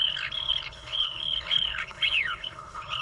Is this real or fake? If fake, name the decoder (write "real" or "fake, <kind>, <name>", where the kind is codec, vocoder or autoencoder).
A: fake, codec, HILCodec